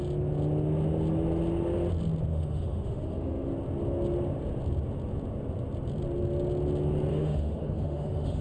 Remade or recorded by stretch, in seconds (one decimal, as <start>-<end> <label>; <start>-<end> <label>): 0.0-2.3 recorded; 2.3-3.5 remade; 3.5-7.1 recorded; 7.1-8.4 remade